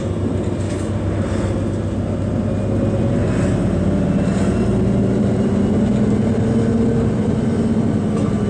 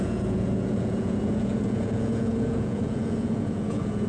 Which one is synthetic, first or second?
second